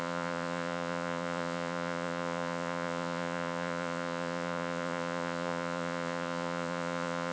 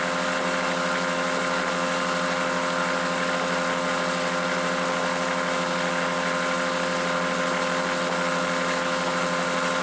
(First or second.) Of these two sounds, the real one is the second